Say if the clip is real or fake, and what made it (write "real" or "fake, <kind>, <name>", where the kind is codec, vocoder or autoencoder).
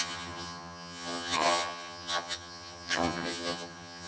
fake, vocoder, HiFi-GAN